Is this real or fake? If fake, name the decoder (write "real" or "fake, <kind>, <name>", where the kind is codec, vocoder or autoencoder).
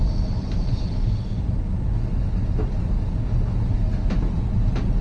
real